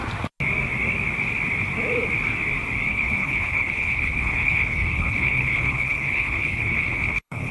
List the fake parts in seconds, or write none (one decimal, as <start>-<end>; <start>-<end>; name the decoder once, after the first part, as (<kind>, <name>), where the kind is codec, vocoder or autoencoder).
2.9-7.5 (codec, HILCodec)